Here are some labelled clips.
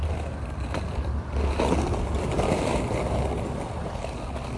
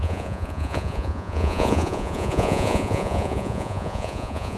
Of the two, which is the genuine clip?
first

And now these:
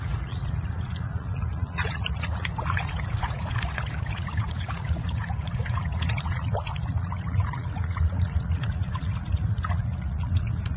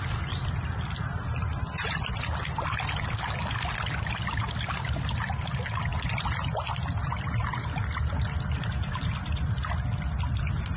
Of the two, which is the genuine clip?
second